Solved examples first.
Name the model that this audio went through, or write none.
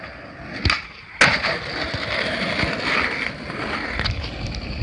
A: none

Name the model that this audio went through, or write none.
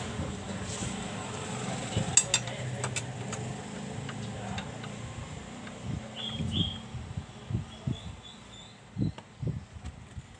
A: none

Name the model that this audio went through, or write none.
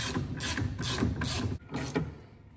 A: none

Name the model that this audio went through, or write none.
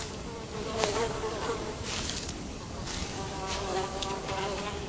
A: codec, DAC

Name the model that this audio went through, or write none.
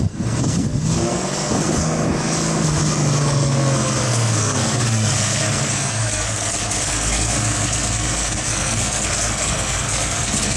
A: codec, SNAC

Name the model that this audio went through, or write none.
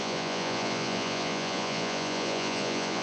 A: vocoder, Vocos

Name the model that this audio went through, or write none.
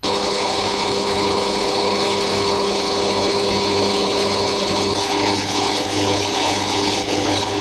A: codec, HILCodec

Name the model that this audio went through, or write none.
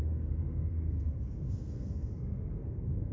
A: codec, SNAC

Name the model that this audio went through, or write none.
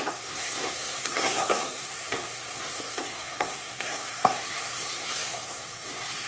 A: codec, SNAC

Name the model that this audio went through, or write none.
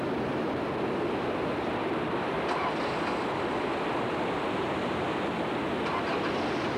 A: none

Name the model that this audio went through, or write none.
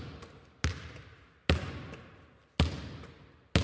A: none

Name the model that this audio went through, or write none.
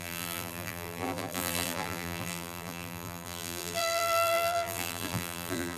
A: vocoder, BigVGAN v2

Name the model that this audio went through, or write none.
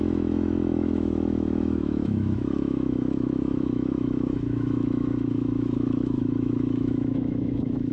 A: autoencoder, DAC-VAE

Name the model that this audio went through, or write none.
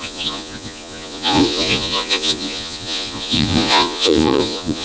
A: vocoder, Vocos